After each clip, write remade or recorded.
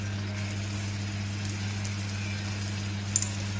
recorded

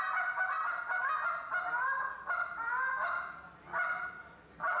recorded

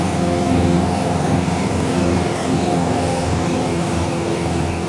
remade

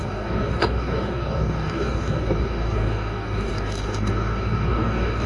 remade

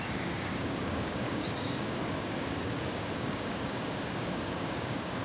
remade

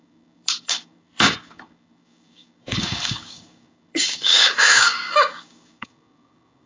remade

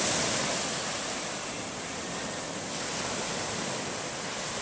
recorded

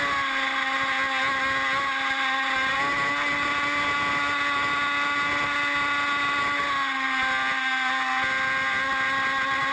recorded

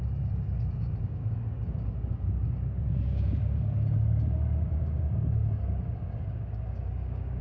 remade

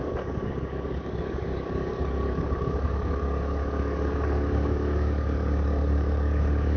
remade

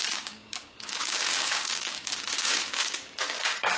remade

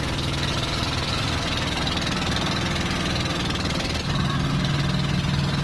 recorded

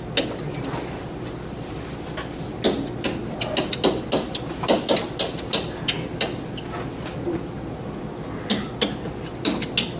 recorded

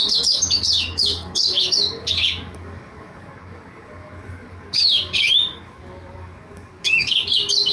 remade